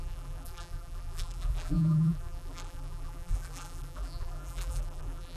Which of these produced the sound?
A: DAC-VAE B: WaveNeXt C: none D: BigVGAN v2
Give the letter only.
D